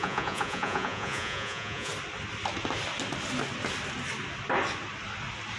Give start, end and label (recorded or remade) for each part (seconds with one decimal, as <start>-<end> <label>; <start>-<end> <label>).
0.0-1.9 remade; 1.9-5.6 recorded